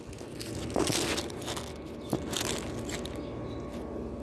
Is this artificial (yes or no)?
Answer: no